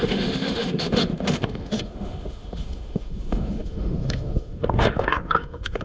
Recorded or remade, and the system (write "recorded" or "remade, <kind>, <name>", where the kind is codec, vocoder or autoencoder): remade, autoencoder, DAC-VAE